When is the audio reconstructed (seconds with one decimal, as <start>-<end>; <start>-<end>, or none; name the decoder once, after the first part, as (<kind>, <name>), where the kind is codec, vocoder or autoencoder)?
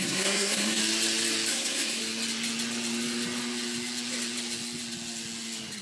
0.0-0.8 (codec, SNAC); 1.5-2.0